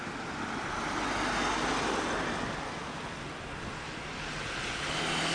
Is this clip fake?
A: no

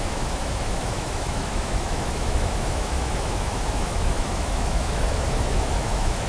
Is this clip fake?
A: yes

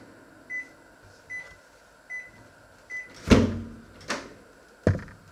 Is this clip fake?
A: no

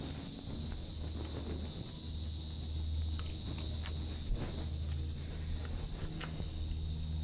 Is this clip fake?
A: no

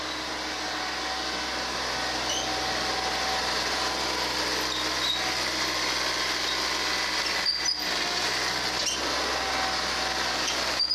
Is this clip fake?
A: no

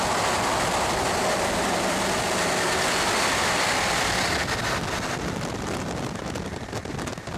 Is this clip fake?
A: no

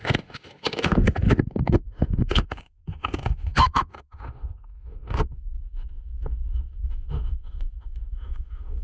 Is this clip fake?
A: yes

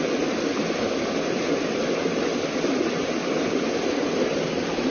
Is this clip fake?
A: no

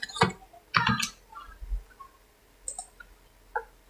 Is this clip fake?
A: no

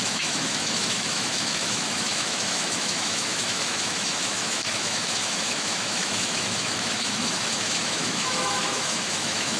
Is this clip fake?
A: yes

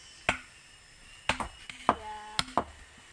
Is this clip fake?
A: no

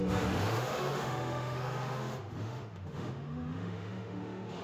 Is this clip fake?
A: yes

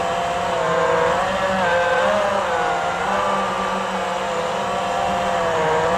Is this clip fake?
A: no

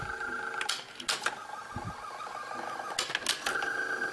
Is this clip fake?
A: no